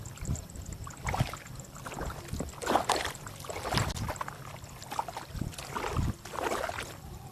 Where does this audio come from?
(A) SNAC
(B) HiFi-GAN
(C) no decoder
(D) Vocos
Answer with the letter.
C